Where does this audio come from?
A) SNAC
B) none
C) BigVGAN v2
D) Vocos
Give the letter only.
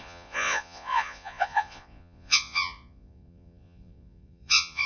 D